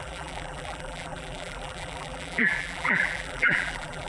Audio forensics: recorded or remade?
remade